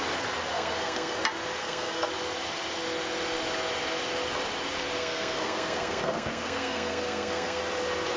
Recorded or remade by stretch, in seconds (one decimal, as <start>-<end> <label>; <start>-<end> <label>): 0.0-0.5 recorded; 0.5-1.2 remade; 1.2-1.6 recorded; 1.6-2.1 remade; 2.1-5.0 recorded; 5.0-7.6 remade; 7.6-8.2 recorded